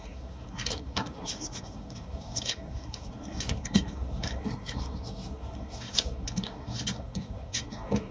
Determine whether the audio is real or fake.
fake